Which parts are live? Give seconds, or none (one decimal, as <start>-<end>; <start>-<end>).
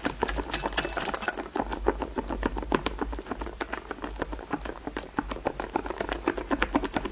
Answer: 0.0-1.7; 6.0-7.1